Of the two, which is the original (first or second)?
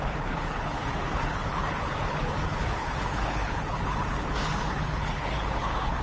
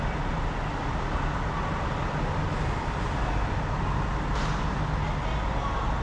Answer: second